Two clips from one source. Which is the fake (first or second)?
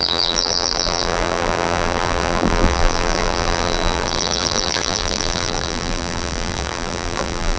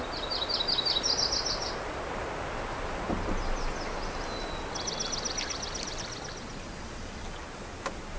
first